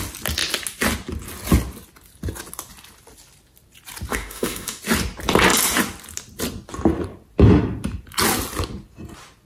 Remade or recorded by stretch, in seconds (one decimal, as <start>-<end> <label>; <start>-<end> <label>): 0.0-4.1 recorded; 4.1-4.8 remade; 4.8-9.5 recorded